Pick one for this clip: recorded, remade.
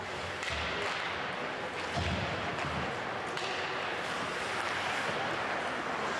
recorded